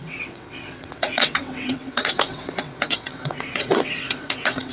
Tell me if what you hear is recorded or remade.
remade